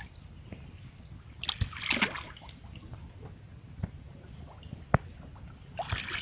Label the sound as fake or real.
real